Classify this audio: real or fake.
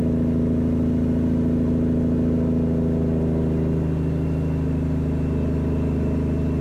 real